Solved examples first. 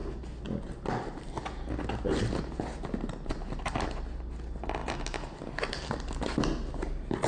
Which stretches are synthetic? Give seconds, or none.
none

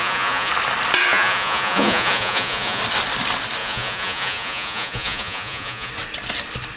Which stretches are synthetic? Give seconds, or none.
0.0-0.5 (vocoder, Vocos); 1.1-2.8; 3.6-5.9

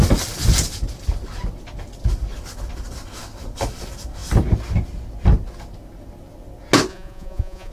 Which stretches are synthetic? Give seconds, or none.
6.9-7.7 (vocoder, Vocos)